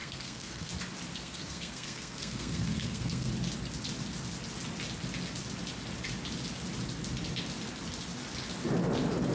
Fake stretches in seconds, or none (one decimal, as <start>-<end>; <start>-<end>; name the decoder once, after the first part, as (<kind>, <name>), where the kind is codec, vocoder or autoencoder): 0.0-0.7 (codec, SNAC); 1.1-3.3